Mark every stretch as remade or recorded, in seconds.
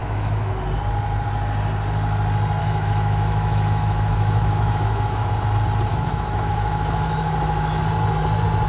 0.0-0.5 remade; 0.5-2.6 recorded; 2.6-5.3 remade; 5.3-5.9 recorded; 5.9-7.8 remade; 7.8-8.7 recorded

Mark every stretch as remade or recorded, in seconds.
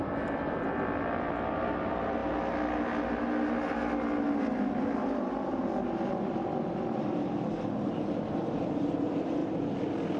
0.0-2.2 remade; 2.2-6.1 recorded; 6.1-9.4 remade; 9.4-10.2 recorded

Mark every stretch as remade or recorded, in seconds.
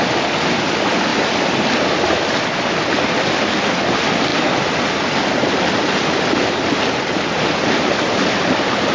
0.0-8.9 recorded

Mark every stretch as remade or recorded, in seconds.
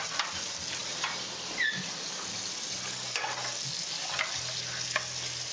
0.0-5.5 recorded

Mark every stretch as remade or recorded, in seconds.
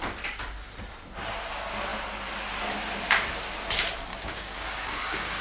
0.0-4.1 recorded; 4.1-5.4 remade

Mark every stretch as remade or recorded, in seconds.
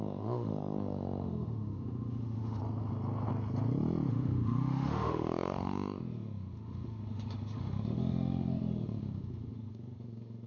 0.0-2.6 remade; 2.6-4.1 recorded; 4.1-10.5 remade